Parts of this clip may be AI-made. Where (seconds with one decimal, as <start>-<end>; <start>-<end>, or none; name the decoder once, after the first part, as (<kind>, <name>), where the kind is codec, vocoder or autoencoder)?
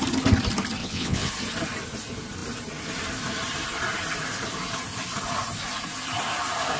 0.8-1.3 (vocoder, WaveNeXt)